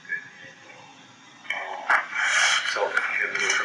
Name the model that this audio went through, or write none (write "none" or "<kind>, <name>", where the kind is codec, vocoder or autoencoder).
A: none